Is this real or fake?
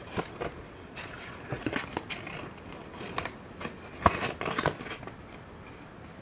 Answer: real